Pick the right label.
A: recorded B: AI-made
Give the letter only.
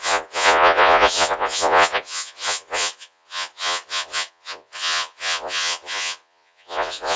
B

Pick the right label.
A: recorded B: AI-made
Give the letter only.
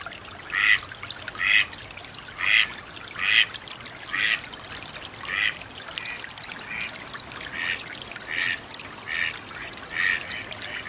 A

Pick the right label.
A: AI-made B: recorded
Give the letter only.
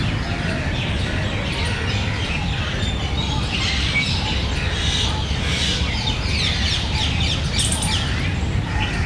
B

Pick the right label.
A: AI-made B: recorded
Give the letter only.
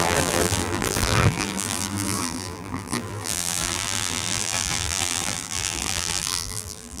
A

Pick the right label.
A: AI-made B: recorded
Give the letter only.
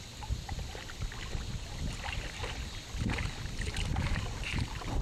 B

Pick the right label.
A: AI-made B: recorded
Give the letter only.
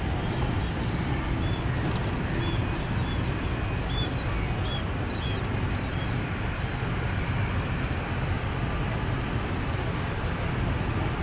B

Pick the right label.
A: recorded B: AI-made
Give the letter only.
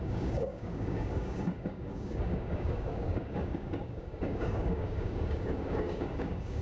B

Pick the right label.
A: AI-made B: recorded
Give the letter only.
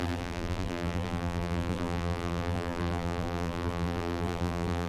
A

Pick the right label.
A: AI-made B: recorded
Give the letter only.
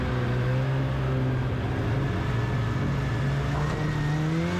B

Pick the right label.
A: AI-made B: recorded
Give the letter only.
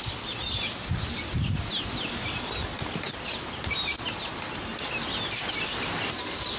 B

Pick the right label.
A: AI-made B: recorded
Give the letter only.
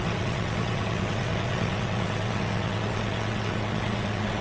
A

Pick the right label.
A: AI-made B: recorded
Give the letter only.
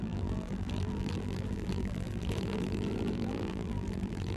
A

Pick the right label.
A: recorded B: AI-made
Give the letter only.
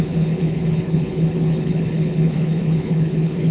B